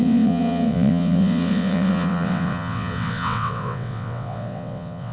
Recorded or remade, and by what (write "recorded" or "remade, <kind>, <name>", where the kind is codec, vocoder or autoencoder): remade, vocoder, WaveNeXt